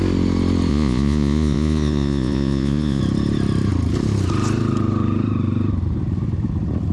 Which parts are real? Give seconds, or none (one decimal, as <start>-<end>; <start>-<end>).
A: 0.0-0.7; 3.0-6.9